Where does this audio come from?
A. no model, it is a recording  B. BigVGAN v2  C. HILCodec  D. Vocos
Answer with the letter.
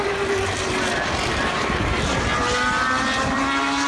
A